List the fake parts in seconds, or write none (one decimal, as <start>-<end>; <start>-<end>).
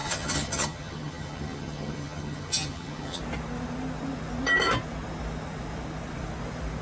0.0-3.2